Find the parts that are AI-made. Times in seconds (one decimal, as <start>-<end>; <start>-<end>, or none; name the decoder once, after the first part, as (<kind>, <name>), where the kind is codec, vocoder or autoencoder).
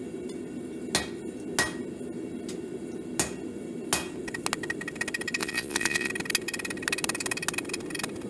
5.4-6.1 (vocoder, Vocos)